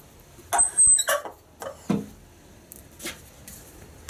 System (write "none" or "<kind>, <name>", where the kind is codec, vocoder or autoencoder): none